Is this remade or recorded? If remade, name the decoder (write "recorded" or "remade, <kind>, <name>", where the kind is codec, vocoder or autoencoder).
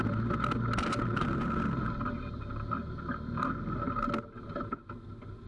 recorded